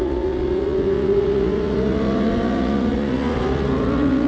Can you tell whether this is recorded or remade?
remade